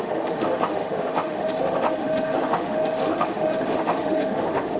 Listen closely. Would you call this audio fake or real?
fake